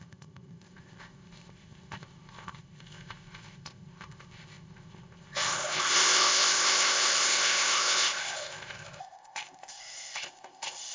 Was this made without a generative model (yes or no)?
no